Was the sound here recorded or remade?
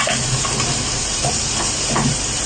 recorded